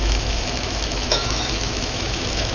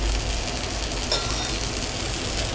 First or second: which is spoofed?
first